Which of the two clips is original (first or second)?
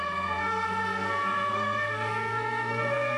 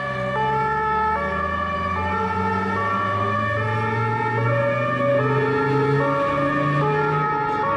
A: second